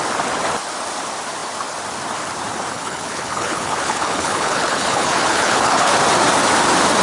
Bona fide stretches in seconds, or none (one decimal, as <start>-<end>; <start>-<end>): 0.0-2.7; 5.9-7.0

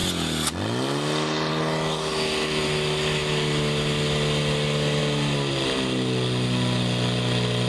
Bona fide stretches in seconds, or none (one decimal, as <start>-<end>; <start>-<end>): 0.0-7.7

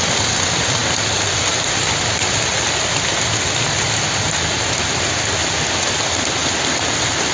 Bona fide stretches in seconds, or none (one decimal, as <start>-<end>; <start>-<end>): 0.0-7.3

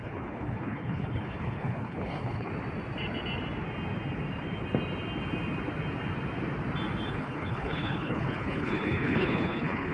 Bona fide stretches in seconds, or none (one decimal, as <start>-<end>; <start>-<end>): 2.5-7.1

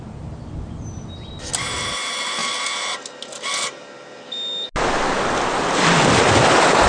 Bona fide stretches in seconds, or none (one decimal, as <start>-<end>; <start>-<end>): 0.0-6.9

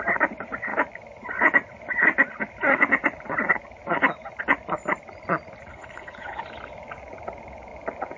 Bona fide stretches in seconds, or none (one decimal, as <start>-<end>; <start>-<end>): 0.0-5.7; 6.4-8.2